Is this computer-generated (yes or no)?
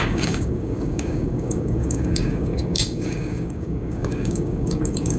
yes